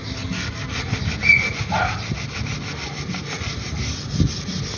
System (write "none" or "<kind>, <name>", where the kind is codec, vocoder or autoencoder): none